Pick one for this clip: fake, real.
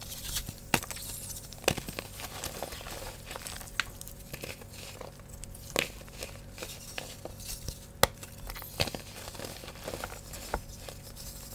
real